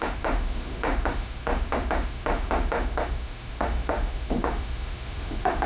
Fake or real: fake